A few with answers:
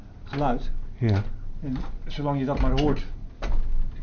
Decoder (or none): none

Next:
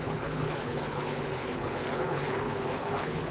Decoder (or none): codec, HILCodec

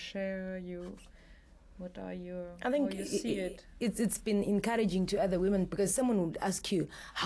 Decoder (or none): none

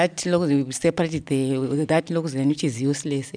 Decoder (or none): none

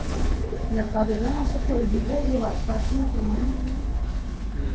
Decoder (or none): codec, HILCodec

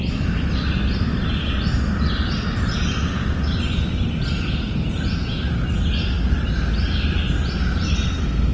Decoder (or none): none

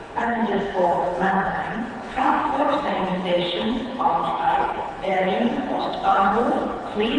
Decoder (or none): codec, HILCodec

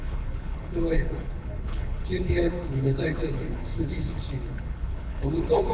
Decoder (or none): codec, HILCodec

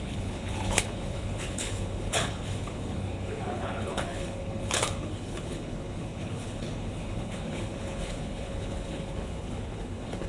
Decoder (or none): codec, HILCodec